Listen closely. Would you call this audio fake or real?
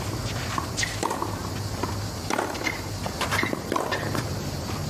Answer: real